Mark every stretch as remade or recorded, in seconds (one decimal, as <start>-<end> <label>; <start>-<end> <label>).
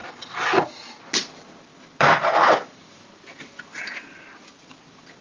0.0-5.2 recorded